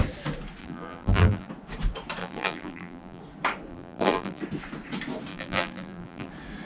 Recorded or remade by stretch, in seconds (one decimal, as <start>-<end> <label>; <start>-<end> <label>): 0.0-0.6 recorded; 0.6-1.5 remade; 1.5-2.2 recorded; 2.2-3.2 remade; 3.2-3.7 recorded; 3.7-4.4 remade; 4.4-5.3 recorded; 5.3-6.3 remade; 6.3-6.7 recorded